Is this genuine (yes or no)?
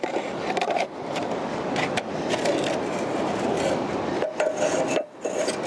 yes